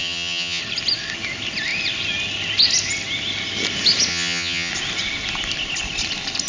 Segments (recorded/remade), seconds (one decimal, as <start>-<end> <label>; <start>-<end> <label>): 0.0-0.6 remade; 0.6-4.1 recorded; 4.1-4.7 remade; 4.7-6.5 recorded